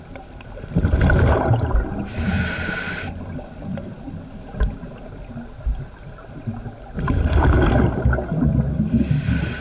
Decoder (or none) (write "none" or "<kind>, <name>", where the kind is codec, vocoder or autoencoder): none